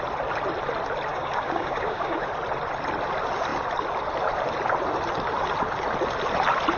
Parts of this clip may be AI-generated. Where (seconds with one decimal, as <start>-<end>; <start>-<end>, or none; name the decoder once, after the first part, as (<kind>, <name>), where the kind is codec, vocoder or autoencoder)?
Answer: 1.1-2.2 (codec, DAC)

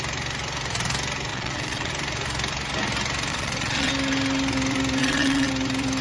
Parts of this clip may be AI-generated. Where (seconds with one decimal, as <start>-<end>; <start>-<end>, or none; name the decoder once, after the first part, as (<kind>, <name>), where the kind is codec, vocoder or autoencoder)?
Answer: 1.3-1.9 (vocoder, WaveNeXt); 3.3-3.9; 5.0-5.5

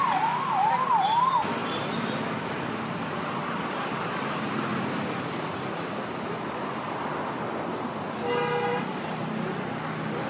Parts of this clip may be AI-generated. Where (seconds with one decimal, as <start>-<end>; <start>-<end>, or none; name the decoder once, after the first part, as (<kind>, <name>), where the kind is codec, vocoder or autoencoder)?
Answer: none

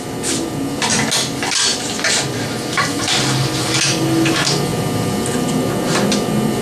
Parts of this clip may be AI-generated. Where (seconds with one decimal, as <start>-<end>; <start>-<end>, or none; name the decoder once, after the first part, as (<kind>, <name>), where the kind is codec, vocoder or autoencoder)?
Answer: 1.7-3.1 (vocoder, BigVGAN v2)

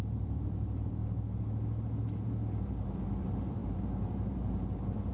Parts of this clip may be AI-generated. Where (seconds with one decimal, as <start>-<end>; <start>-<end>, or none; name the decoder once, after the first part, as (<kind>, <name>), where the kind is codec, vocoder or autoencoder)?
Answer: 0.0-1.0 (vocoder, BigVGAN v2); 2.0-5.1